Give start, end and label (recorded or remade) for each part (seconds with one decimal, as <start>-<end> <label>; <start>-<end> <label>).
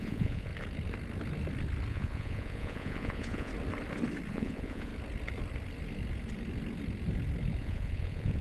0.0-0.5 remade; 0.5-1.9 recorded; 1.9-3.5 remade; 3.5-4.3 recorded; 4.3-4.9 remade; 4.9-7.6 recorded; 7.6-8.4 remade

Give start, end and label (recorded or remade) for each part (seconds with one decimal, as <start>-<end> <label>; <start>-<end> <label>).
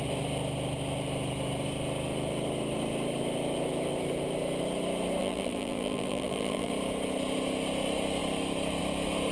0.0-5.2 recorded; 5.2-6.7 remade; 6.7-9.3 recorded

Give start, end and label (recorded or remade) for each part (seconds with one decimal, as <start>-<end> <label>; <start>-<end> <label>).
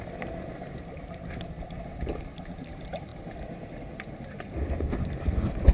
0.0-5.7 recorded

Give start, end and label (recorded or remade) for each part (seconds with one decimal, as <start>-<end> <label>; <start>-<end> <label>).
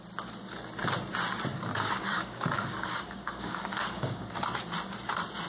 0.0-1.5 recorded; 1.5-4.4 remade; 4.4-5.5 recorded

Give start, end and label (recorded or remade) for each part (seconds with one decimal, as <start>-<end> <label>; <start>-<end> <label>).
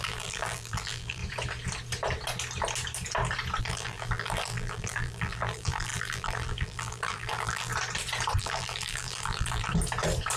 0.0-1.2 remade; 1.2-3.6 recorded; 3.6-7.7 remade; 7.7-8.4 recorded; 8.4-9.7 remade; 9.7-10.4 recorded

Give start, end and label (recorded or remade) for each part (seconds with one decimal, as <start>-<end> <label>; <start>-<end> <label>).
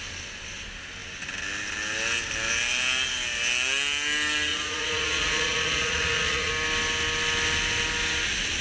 0.0-4.5 recorded; 4.5-6.5 remade; 6.5-8.6 recorded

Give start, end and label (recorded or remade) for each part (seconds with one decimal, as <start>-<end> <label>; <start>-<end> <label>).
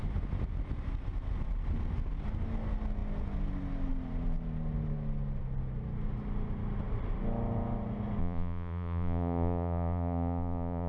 0.0-8.2 recorded; 8.2-10.9 remade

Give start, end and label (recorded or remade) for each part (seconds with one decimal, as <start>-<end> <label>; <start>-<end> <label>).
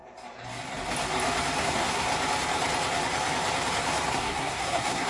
0.0-1.6 recorded; 1.6-2.1 remade; 2.1-4.1 recorded; 4.1-5.1 remade